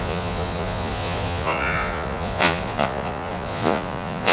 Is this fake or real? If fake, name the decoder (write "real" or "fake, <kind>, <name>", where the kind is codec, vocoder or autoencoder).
fake, vocoder, Vocos